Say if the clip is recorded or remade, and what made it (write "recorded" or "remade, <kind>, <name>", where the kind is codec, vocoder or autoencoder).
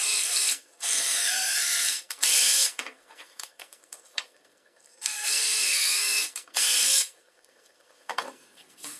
remade, codec, SNAC